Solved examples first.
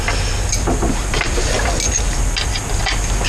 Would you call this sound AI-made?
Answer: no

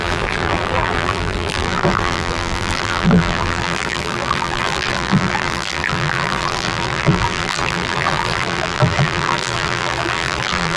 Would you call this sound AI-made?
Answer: yes